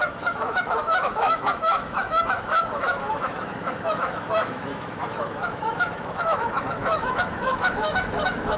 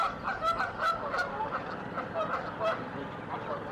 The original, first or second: second